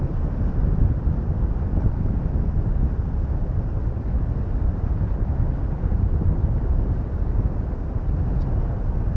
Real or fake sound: real